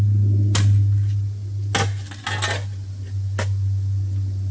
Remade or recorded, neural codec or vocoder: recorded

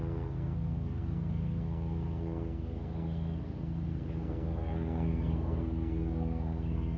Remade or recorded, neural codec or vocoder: remade, codec, SNAC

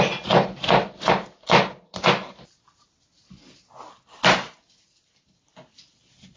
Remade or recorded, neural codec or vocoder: recorded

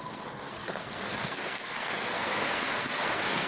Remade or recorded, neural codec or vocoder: remade, codec, SNAC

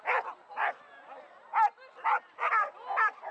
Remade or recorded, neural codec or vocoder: recorded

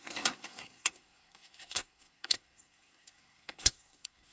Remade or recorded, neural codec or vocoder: remade, codec, SNAC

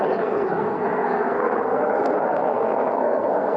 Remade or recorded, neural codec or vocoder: remade, codec, SNAC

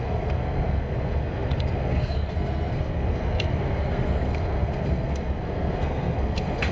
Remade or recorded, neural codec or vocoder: remade, codec, SNAC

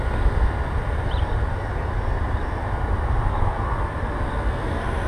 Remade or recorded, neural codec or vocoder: recorded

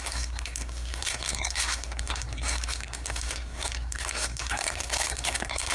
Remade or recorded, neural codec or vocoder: remade, codec, SNAC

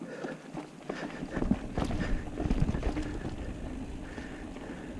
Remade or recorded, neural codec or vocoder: recorded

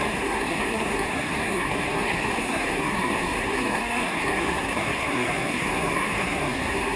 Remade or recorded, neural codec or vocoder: remade, codec, SNAC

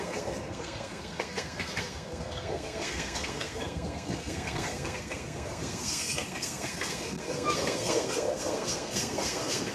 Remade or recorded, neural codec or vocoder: remade, codec, SNAC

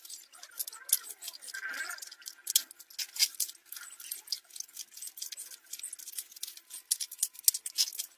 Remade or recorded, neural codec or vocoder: recorded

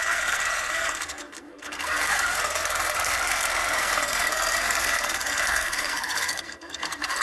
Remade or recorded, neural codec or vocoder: remade, codec, SNAC